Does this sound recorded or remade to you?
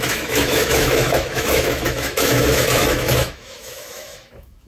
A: remade